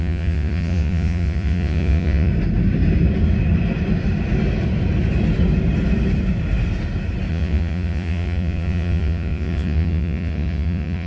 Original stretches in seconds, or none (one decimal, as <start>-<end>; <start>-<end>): 2.3-7.3